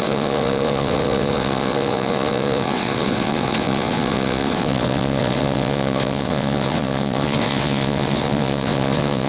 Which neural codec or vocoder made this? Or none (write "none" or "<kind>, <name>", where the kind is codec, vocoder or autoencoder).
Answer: vocoder, WaveNeXt